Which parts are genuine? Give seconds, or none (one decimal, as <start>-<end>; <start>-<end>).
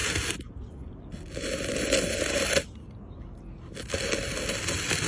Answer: 0.0-5.1